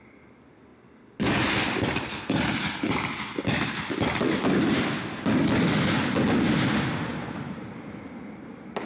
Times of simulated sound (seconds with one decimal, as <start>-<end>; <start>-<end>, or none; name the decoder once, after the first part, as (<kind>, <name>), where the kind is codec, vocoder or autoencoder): 7.1-7.7 (vocoder, BigVGAN v2)